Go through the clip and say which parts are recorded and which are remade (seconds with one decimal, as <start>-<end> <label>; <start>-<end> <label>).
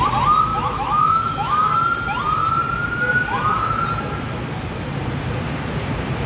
0.0-0.5 recorded; 0.5-1.7 remade; 1.7-6.3 recorded